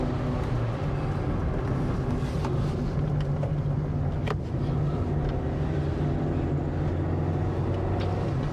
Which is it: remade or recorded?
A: recorded